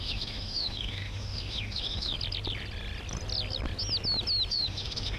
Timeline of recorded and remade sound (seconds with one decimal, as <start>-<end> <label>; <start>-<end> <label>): 0.0-2.1 remade; 2.1-4.5 recorded; 4.5-5.2 remade